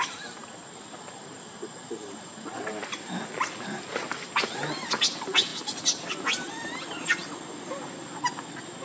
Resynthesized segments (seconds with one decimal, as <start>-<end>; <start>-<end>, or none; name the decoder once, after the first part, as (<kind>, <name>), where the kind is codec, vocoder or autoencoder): none